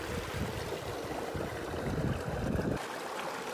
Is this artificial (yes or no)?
no